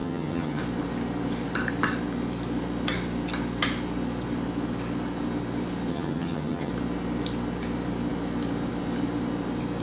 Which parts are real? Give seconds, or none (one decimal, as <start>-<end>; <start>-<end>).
0.6-5.9; 6.7-9.8